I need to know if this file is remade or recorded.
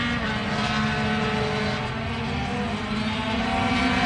recorded